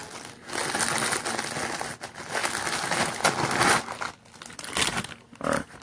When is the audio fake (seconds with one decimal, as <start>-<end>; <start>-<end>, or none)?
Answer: none